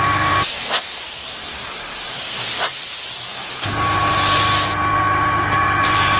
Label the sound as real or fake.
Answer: fake